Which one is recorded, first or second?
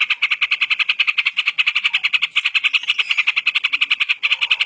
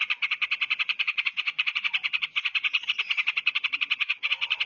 first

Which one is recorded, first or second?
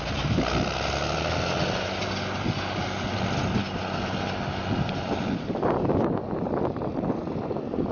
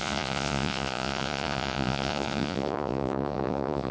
first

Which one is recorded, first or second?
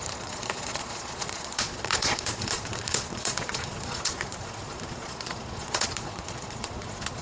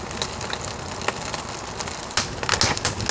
second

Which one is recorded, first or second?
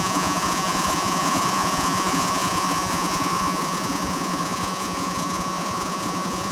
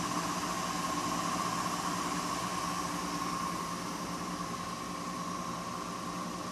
second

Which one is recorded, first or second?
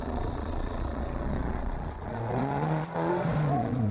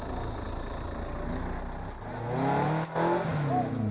second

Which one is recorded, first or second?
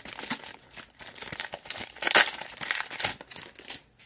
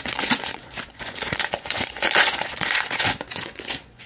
first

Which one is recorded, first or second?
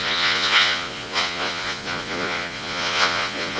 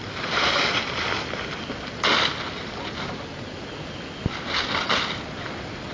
second